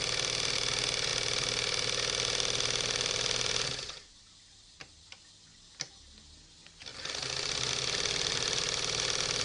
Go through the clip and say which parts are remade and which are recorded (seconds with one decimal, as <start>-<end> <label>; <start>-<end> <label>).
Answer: 0.0-9.4 recorded